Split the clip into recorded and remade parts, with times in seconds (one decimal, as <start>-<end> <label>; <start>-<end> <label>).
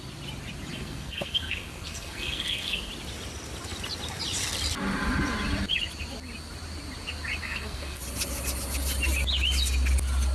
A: 0.0-0.7 recorded; 0.7-2.9 remade; 2.9-7.4 recorded; 7.4-8.0 remade; 8.0-10.3 recorded